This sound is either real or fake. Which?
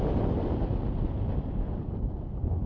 real